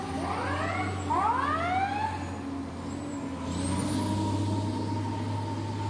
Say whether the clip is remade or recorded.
recorded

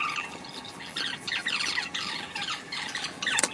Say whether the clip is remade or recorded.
remade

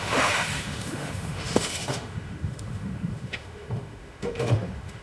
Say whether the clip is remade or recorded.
remade